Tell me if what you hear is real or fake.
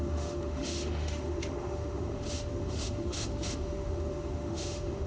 fake